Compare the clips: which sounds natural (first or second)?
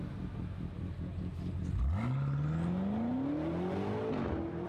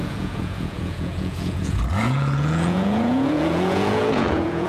first